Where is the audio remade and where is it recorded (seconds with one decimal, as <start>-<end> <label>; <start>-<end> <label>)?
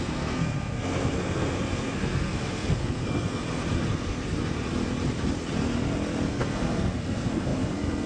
0.0-3.4 remade; 3.4-3.9 recorded; 3.9-4.4 remade; 4.4-6.3 recorded; 6.3-8.1 remade